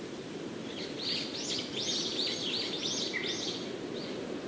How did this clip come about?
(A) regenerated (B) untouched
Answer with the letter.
B